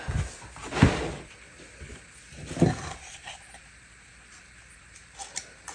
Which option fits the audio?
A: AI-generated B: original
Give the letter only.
B